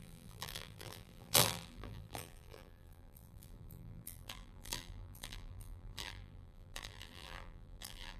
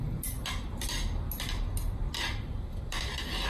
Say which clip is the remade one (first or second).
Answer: first